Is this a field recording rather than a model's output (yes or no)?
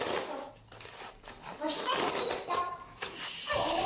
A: yes